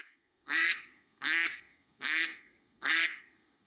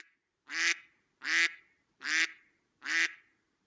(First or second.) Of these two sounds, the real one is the second